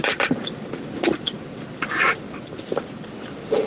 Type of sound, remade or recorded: recorded